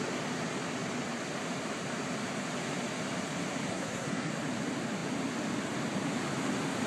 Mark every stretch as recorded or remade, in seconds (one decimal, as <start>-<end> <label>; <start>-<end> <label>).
0.0-3.7 recorded; 3.7-4.3 remade; 4.3-6.9 recorded